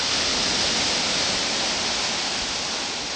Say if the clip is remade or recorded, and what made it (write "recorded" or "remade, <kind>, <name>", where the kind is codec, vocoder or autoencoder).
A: recorded